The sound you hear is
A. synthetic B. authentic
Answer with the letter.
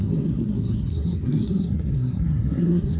A